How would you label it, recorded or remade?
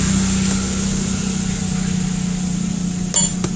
recorded